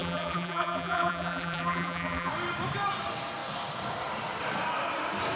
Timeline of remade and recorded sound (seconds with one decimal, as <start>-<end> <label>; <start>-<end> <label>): 0.0-2.3 remade; 2.3-5.4 recorded